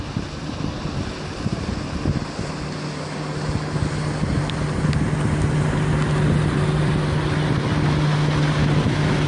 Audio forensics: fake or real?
real